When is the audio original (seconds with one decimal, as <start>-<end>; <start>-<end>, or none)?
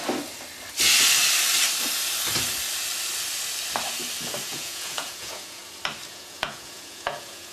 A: 0.0-4.5; 5.6-6.1